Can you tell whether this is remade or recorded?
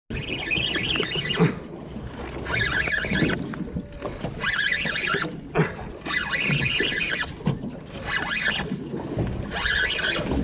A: recorded